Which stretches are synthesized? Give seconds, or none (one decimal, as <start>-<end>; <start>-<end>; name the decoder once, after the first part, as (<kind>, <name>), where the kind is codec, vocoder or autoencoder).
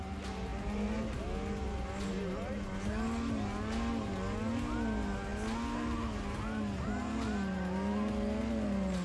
none